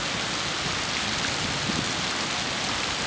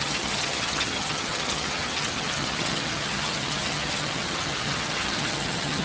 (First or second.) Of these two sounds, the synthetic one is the second